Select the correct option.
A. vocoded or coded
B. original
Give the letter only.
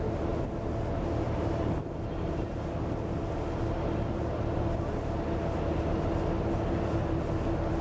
B